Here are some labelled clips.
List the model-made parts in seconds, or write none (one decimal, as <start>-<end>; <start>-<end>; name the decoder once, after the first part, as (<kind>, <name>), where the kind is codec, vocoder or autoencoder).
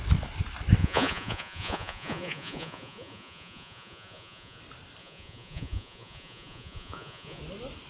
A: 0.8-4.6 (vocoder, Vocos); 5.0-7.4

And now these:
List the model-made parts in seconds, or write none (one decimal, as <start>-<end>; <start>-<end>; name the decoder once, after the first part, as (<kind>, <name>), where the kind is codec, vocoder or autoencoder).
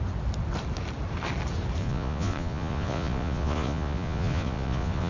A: 1.8-5.1 (vocoder, Vocos)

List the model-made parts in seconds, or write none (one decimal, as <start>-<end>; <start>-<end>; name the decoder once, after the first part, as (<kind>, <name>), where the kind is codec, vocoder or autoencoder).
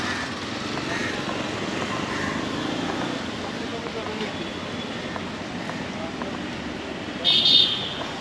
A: 7.5-8.2 (vocoder, Vocos)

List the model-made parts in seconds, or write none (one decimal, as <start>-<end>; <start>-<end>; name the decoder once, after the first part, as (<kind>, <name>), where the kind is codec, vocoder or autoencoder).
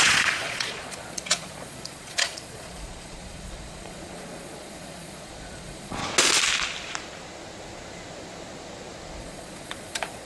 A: 0.0-6.0 (vocoder, Vocos); 9.2-10.3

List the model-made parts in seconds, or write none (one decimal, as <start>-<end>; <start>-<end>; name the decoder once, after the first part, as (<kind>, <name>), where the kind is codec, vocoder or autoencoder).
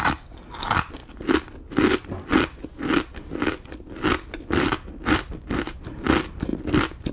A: none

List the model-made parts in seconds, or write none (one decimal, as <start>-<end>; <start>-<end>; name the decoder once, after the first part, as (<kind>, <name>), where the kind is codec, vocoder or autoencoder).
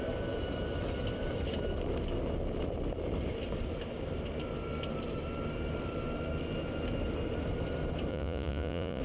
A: 8.1-9.0 (vocoder, Vocos)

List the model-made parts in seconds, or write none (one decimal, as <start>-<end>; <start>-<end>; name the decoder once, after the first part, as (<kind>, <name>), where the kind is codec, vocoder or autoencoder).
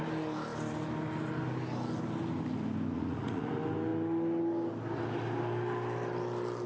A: 2.9-3.5 (vocoder, Vocos)